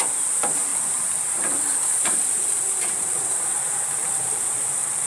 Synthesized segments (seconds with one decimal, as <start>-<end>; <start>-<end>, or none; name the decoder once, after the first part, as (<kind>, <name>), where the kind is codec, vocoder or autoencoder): 0.0-5.1 (vocoder, BigVGAN v2)